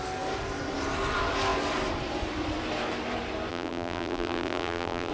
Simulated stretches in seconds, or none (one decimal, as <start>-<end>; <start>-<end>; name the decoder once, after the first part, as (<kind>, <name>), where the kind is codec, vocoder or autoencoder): 3.5-5.1 (vocoder, BigVGAN v2)